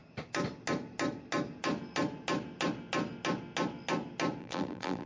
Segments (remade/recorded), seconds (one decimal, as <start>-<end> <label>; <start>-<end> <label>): 0.0-4.4 recorded; 4.4-5.1 remade